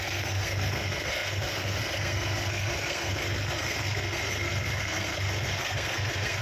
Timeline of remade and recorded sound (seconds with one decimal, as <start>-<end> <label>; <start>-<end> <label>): 0.0-6.4 remade